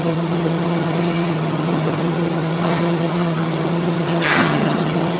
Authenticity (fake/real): fake